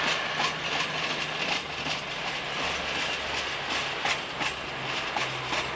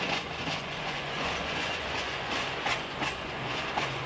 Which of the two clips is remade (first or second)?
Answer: second